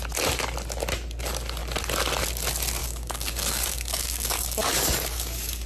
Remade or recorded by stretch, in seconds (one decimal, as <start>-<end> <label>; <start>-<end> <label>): 0.0-2.8 recorded; 2.8-5.7 remade